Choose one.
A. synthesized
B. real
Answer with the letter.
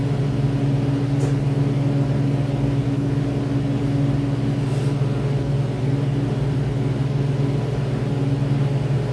B